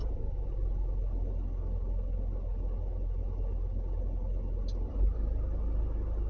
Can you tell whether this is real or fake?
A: real